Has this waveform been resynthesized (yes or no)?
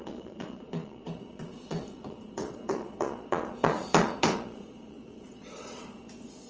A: yes